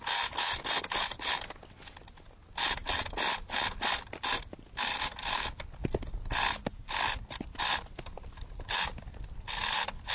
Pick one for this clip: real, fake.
real